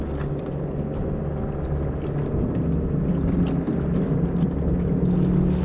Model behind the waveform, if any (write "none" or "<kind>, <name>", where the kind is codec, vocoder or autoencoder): none